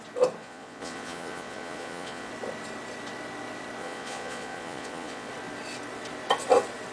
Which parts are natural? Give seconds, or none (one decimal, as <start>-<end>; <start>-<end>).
0.0-0.4; 2.3-3.8; 5.3-6.9